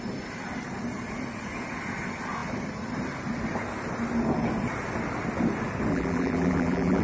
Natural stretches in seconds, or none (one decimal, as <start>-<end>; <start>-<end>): 0.0-5.9